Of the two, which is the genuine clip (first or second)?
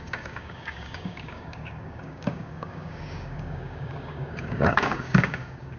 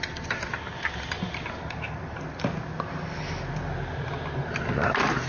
second